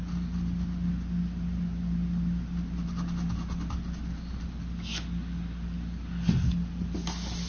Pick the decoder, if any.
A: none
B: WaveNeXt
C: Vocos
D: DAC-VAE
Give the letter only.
A